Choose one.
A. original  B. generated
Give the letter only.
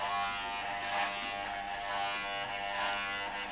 A